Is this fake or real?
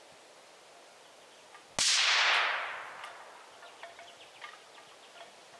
real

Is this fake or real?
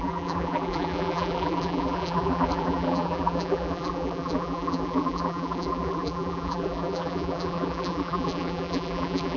fake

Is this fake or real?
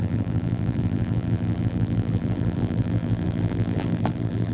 fake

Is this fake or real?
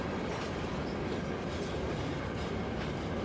fake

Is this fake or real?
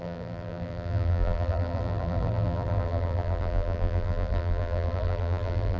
fake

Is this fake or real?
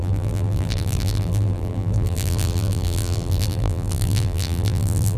fake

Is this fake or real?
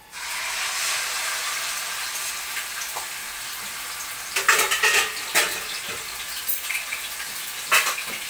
real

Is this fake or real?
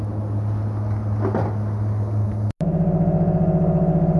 real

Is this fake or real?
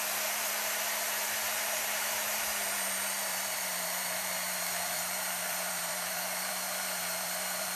fake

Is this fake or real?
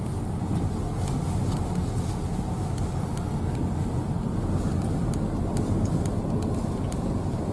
real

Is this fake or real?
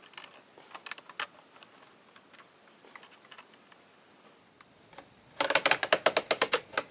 real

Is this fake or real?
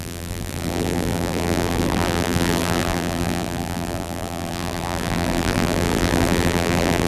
fake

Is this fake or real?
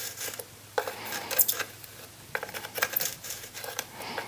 fake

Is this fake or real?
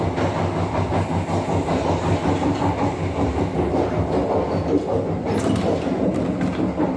real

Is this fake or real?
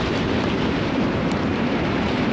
fake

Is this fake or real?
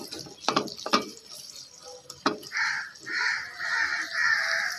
real